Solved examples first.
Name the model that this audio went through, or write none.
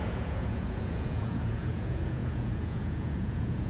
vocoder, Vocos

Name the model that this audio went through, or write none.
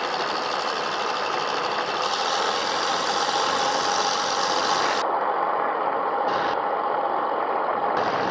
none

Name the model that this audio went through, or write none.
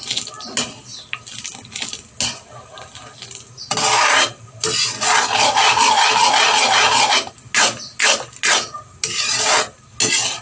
none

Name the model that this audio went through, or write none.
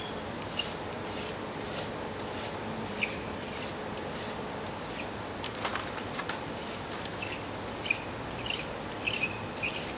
none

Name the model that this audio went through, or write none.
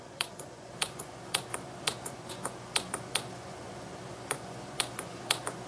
vocoder, Vocos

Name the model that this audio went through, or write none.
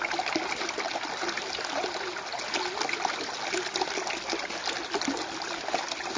none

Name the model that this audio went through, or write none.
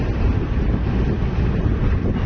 none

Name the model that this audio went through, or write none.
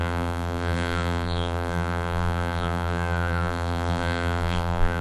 vocoder, BigVGAN v2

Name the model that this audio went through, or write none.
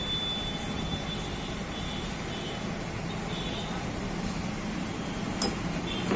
none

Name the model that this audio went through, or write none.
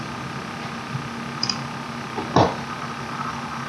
none